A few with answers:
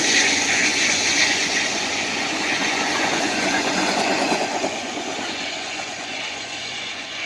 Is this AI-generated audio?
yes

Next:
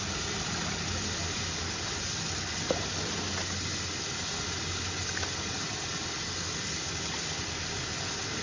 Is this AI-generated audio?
no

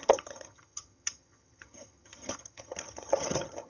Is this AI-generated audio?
yes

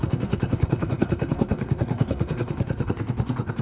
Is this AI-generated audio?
yes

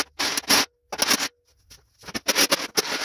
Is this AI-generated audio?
no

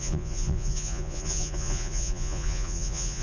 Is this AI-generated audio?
yes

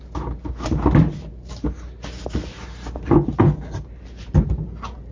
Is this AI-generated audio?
no